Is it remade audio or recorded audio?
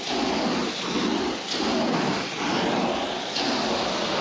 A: recorded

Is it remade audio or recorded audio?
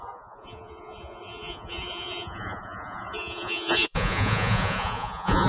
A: remade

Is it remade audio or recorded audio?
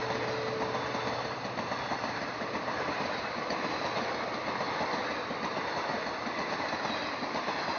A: recorded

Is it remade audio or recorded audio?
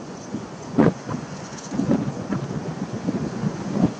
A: remade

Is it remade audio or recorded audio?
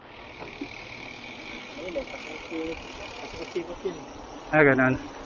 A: recorded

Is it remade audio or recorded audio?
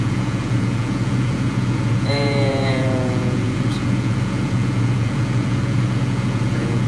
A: remade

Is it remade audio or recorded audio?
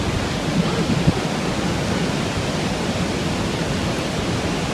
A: recorded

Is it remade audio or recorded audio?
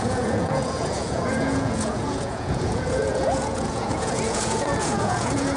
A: remade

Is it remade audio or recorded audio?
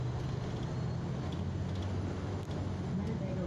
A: recorded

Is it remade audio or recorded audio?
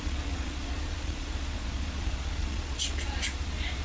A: remade